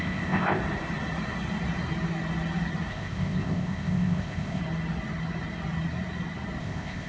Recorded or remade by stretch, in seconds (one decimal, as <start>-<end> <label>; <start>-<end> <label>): 0.0-0.6 remade; 0.6-2.9 recorded; 2.9-4.6 remade; 4.6-6.6 recorded; 6.6-7.1 remade